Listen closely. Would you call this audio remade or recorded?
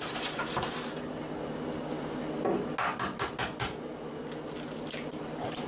recorded